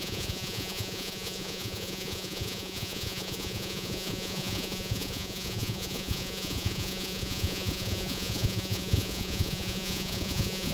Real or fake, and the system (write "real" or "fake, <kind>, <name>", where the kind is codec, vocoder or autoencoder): fake, vocoder, Vocos